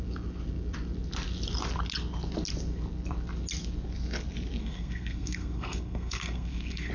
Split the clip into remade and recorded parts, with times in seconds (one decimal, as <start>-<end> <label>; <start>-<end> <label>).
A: 0.0-4.6 recorded; 4.6-6.9 remade